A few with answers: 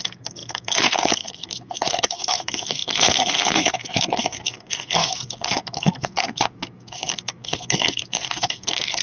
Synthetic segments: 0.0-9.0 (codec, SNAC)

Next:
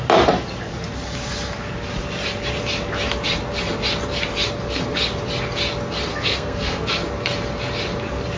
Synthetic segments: 6.1-6.9 (codec, SNAC)

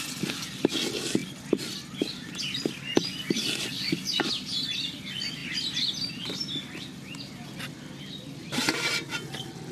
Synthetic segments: none

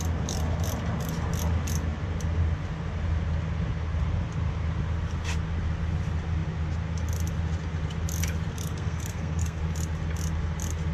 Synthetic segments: 8.5-9.6 (codec, SNAC)

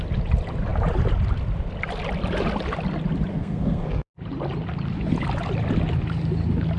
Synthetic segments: 3.3-4.1 (codec, SNAC)

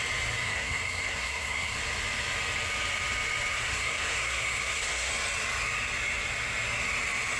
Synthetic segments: 0.4-1.8 (codec, SNAC); 3.5-5.1

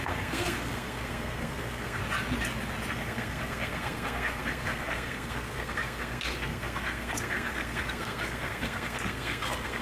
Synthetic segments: 0.0-2.0 (codec, SNAC); 2.9-9.8

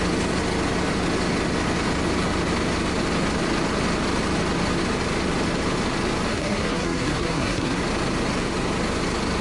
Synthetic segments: 6.3-7.8 (codec, SNAC)